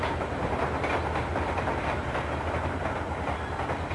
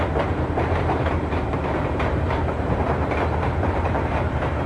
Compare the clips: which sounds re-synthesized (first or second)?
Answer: second